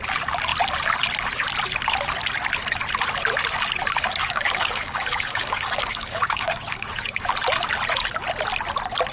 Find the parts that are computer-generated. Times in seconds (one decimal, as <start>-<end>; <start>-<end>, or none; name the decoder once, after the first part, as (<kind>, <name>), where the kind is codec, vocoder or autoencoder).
4.2-7.3 (codec, DAC)